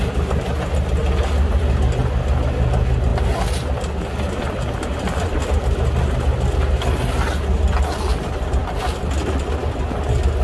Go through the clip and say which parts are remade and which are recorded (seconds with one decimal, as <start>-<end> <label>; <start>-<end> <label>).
0.0-10.4 recorded